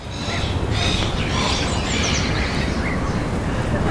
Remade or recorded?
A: recorded